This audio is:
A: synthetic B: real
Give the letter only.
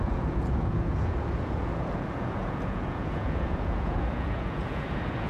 A